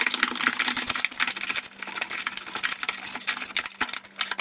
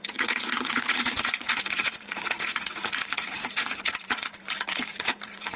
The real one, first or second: first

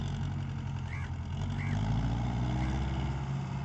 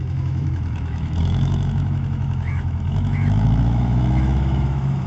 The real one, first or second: first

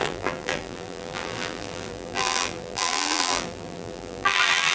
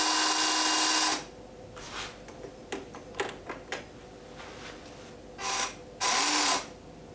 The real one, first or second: second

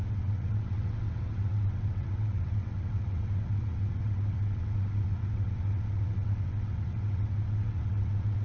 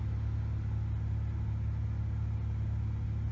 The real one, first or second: second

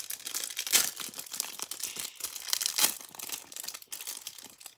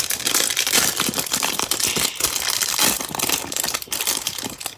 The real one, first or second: first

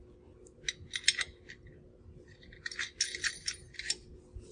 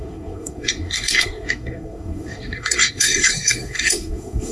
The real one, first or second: first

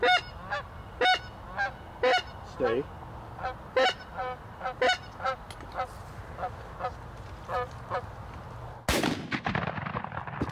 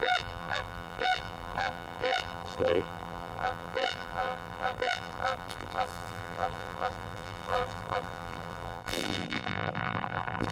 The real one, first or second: first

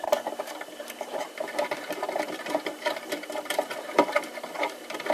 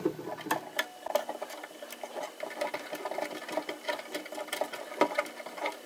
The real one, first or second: second